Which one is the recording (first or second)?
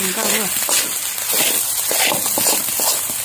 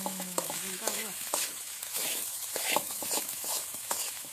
first